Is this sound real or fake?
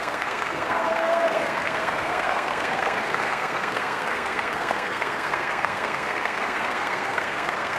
fake